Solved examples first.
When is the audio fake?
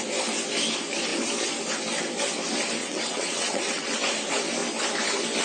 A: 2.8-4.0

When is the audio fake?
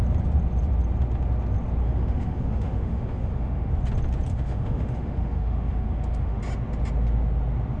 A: 1.8-3.7; 4.3-6.4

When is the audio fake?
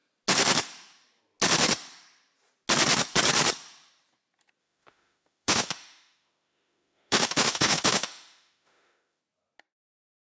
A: 4.6-9.2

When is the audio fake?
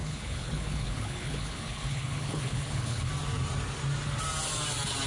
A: 0.0-3.1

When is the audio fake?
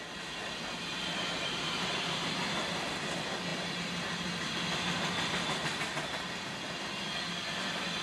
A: none